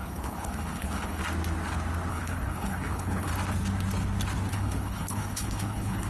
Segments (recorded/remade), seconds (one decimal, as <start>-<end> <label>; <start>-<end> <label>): 0.0-1.2 remade; 1.2-2.1 recorded; 2.1-3.3 remade; 3.3-4.5 recorded; 4.5-6.1 remade